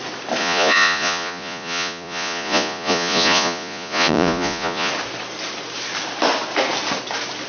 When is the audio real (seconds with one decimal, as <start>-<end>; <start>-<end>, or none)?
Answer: 0.0-0.4; 4.9-7.5